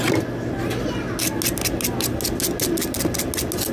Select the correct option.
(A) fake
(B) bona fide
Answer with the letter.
B